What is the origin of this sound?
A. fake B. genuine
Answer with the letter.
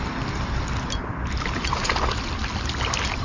B